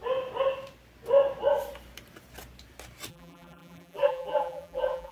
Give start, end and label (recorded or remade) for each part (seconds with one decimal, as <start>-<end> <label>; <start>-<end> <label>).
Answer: 0.0-3.1 recorded; 3.1-5.1 remade